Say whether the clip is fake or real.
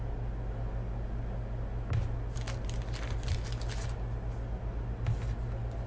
real